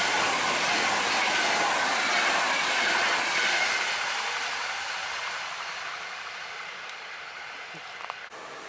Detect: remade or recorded remade